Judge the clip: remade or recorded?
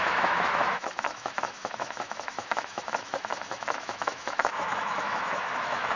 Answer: remade